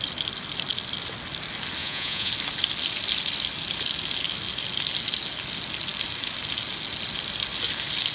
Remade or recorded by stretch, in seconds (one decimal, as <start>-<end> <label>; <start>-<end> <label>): 0.0-1.8 recorded; 1.8-2.3 remade; 2.3-8.1 recorded